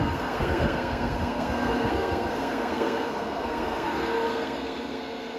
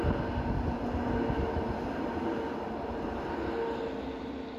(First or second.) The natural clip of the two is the second